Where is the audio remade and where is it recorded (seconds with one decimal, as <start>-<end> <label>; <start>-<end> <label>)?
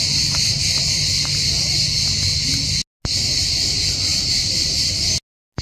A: 0.0-4.1 recorded; 4.1-4.8 remade; 4.8-5.6 recorded